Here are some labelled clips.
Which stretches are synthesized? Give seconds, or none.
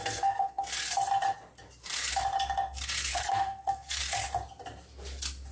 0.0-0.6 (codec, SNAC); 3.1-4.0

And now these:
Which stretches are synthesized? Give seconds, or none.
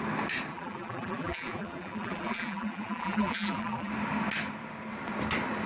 0.5-3.9 (vocoder, BigVGAN v2)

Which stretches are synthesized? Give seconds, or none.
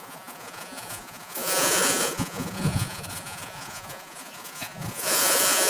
0.0-5.7 (vocoder, Vocos)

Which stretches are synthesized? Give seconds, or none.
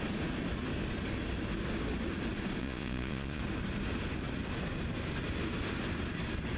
2.6-3.4 (vocoder, Vocos)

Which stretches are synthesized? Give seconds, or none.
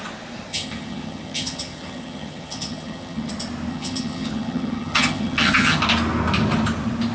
0.5-3.3 (vocoder, HiFi-GAN); 3.7-5.8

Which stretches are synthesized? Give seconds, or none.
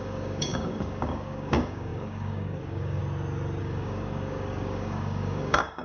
0.0-3.0 (codec, DAC); 3.6-5.8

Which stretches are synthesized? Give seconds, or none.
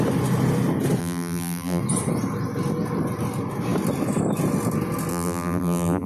1.0-1.8 (vocoder, BigVGAN v2); 5.1-6.1